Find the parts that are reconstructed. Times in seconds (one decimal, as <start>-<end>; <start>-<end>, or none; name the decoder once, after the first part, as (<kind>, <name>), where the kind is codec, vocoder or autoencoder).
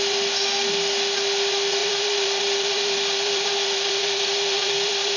1.8-5.2 (vocoder, BigVGAN v2)